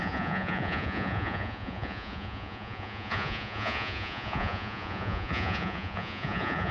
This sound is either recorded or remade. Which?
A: remade